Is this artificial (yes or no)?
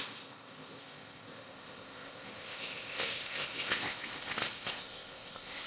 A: yes